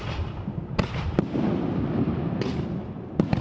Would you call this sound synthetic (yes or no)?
no